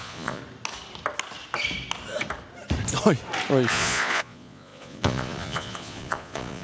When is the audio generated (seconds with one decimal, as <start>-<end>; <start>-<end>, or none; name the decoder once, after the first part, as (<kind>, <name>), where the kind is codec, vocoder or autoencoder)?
0.0-0.4 (vocoder, Vocos); 3.7-6.6